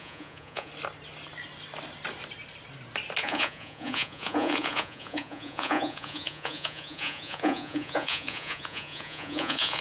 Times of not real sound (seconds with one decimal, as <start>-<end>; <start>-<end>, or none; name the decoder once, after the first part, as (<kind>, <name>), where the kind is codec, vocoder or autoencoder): 0.0-0.7 (vocoder, Vocos); 3.2-9.8